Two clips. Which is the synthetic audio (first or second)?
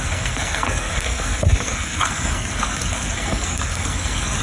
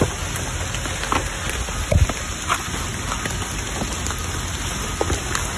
first